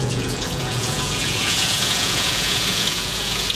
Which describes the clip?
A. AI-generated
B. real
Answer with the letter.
A